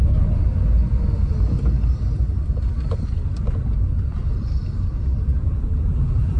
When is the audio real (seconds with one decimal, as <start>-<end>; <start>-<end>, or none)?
0.0-5.3